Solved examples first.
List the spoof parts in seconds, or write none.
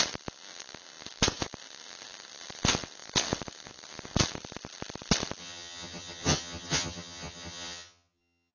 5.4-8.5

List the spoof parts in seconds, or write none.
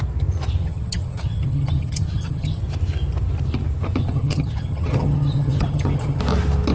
0.6-2.6; 4.0-6.2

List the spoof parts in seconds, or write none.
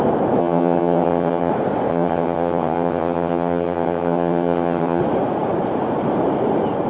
0.4-1.5; 1.9-5.0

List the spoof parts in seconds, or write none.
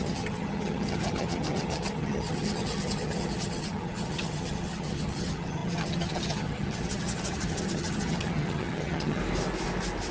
0.0-9.2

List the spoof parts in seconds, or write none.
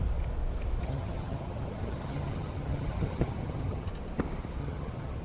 0.8-3.9; 4.6-5.2